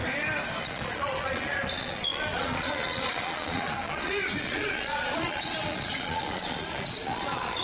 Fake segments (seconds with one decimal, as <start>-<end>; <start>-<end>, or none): 0.6-7.6